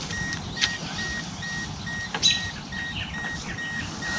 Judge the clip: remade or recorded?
recorded